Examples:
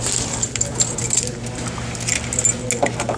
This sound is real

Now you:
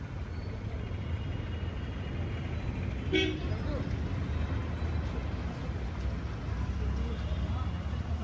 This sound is real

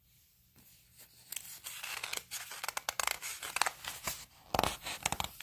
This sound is real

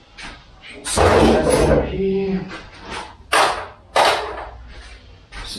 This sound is real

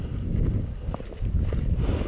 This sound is real